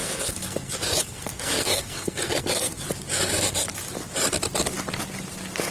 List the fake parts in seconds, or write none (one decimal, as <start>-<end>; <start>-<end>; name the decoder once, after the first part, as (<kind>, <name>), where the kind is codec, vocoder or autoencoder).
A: 0.0-2.8 (codec, SNAC)